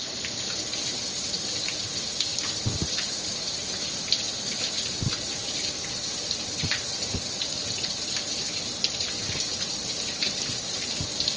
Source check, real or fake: fake